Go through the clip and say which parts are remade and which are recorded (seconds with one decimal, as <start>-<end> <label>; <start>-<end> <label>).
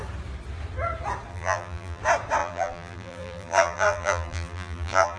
0.0-1.3 recorded; 1.3-2.0 remade; 2.0-2.4 recorded; 2.4-5.2 remade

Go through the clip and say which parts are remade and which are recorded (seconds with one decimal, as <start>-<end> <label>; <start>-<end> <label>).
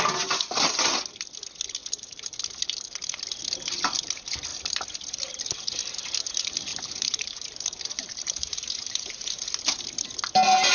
0.0-6.7 recorded; 6.7-9.4 remade; 9.4-10.7 recorded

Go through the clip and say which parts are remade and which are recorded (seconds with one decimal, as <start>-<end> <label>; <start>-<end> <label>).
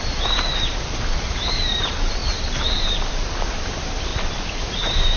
0.0-2.2 remade; 2.2-3.1 recorded; 3.1-4.1 remade; 4.1-4.6 recorded; 4.6-5.2 remade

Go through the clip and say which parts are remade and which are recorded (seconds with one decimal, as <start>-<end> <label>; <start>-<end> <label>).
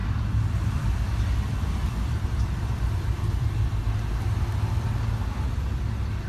0.0-3.8 remade; 3.8-6.3 recorded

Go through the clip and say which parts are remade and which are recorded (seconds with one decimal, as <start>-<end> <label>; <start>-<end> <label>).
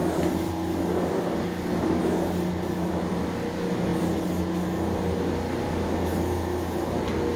0.0-7.4 recorded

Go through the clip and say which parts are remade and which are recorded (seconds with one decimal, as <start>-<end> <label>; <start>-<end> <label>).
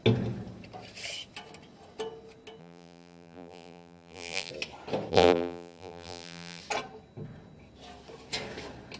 0.0-2.6 recorded; 2.6-4.5 remade; 4.5-5.1 recorded; 5.1-6.6 remade; 6.6-9.0 recorded